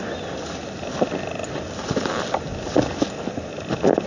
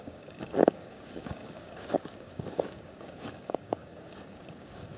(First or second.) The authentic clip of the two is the first